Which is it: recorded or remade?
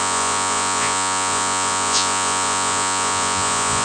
remade